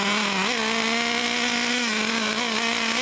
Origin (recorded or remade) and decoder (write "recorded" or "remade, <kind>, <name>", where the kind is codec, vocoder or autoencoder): recorded